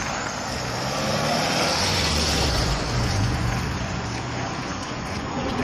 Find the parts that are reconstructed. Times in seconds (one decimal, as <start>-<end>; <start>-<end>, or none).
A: 1.8-5.6